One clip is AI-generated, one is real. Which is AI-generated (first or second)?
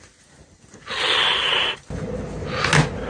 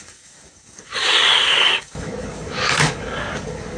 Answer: second